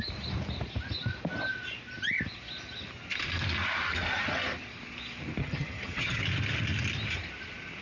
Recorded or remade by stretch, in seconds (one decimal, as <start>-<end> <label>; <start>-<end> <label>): 0.0-5.4 recorded; 5.4-6.2 remade; 6.2-7.8 recorded